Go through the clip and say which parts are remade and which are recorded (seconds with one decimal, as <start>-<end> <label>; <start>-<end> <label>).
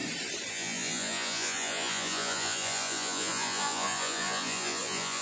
0.0-0.5 recorded; 0.5-5.2 remade